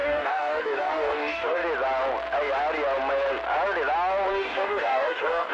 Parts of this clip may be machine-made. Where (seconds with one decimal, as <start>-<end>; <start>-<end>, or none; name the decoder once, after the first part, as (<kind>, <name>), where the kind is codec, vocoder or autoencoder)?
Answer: 0.0-1.6 (codec, DAC); 4.3-5.5